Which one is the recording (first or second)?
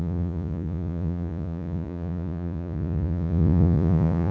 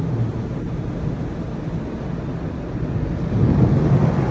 second